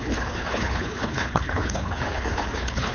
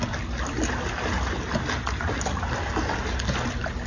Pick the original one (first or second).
second